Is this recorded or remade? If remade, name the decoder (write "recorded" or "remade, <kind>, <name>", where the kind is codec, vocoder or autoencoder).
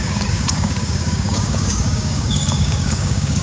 remade, codec, DAC